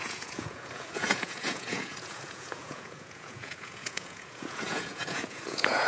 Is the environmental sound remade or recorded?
remade